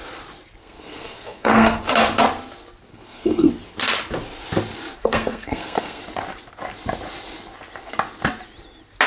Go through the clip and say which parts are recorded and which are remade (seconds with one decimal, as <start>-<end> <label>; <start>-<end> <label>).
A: 0.0-0.6 recorded; 0.6-1.8 remade; 1.8-2.9 recorded; 2.9-3.5 remade; 3.5-5.0 recorded; 5.0-6.0 remade; 6.0-9.1 recorded